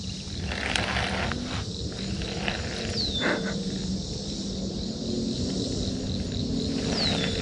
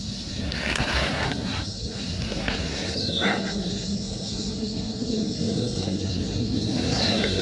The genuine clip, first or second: first